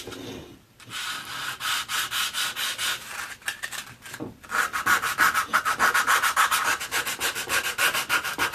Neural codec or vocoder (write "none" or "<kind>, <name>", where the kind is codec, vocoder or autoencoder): none